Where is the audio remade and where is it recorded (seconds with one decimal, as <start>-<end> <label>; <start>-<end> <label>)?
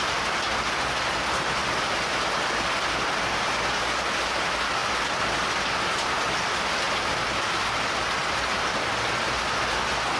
0.0-4.8 recorded; 4.8-5.6 remade; 5.6-8.2 recorded; 8.2-8.9 remade; 8.9-10.2 recorded